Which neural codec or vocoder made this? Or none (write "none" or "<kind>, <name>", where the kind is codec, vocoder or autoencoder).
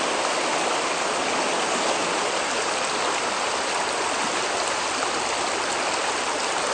none